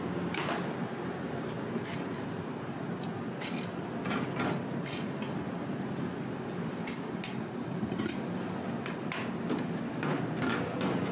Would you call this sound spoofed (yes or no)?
no